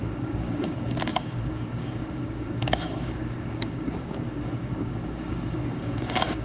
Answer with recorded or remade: remade